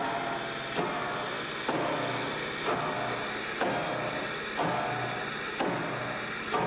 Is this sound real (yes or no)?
yes